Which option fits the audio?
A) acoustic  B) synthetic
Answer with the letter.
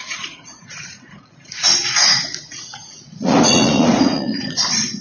B